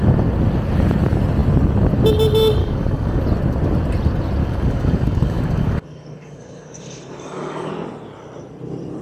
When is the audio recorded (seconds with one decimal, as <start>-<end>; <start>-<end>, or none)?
0.0-2.6; 3.2-4.4; 7.7-9.0

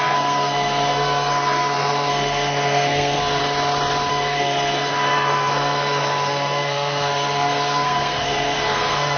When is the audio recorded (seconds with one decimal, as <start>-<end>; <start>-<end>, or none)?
3.4-4.1

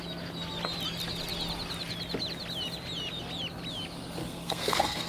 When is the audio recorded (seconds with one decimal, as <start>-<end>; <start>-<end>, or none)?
0.0-4.2

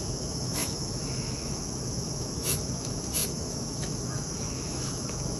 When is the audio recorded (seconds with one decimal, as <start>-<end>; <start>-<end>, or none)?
none

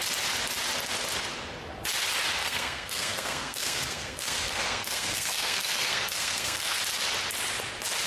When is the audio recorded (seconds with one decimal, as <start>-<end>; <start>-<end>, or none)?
0.0-2.4; 6.8-8.1

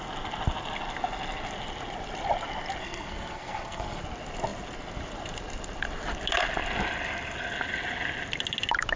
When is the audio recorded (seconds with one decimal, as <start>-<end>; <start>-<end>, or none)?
0.0-2.8; 4.0-9.0